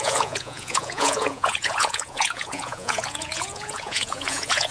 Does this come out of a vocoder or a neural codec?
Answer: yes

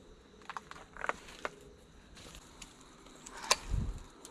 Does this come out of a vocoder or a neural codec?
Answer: no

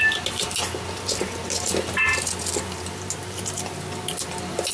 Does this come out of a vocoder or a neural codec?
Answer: no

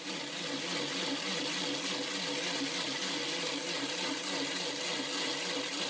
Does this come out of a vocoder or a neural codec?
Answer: no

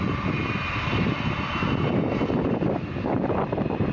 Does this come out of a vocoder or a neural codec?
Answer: no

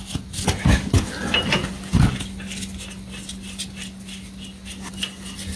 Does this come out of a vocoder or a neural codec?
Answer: no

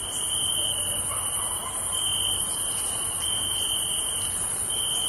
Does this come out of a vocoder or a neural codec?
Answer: no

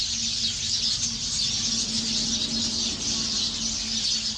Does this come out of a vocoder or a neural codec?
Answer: no